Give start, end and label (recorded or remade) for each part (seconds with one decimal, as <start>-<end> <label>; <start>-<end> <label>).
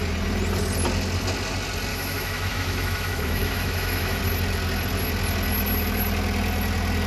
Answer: 0.0-1.9 recorded; 1.9-4.2 remade; 4.2-7.1 recorded